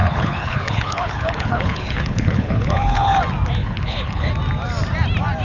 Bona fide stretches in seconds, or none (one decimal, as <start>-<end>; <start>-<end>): 3.2-3.6; 4.3-5.4